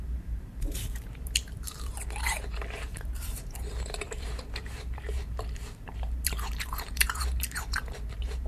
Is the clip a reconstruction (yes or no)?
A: yes